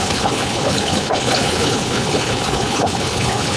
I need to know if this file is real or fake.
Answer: fake